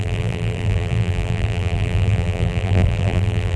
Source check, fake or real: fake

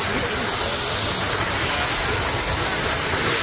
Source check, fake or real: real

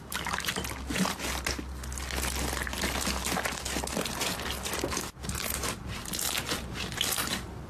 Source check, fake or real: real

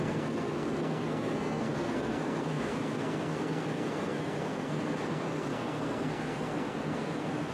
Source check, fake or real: fake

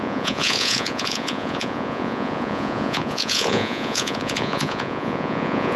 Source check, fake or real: fake